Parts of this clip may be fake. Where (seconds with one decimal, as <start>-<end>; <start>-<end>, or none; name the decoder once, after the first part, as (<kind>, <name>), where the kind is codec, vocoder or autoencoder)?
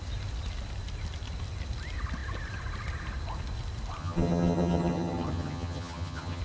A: 4.0-6.4 (vocoder, HiFi-GAN)